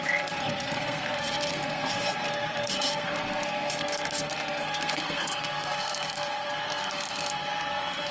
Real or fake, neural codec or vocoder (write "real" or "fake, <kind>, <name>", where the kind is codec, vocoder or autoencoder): fake, codec, SNAC